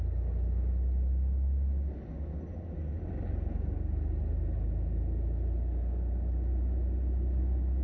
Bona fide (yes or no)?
yes